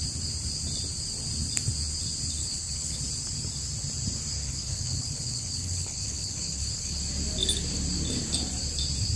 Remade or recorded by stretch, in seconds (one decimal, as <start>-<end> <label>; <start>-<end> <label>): 0.0-2.4 recorded; 2.4-3.0 remade; 3.0-4.4 recorded; 4.4-7.0 remade; 7.0-9.2 recorded